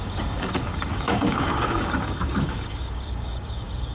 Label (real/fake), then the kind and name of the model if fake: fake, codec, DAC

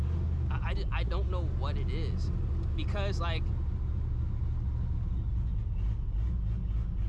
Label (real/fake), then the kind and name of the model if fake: real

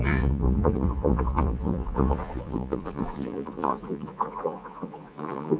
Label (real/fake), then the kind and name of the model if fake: fake, vocoder, Vocos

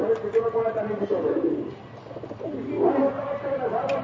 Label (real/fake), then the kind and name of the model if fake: real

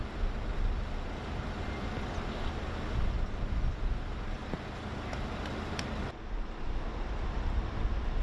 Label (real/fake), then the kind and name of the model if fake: real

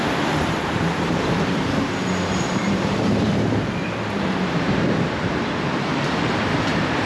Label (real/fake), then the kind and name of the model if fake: fake, vocoder, BigVGAN v2